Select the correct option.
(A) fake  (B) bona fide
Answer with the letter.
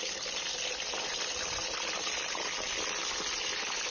B